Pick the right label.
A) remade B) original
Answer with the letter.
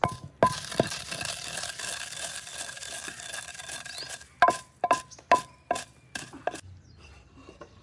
B